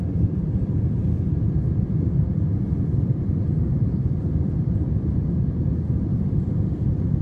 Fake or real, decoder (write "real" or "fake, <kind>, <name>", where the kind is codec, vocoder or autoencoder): real